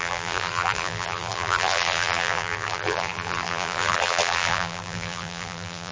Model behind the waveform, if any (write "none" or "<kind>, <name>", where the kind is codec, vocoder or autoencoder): vocoder, BigVGAN v2